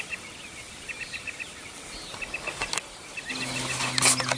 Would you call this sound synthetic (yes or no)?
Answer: no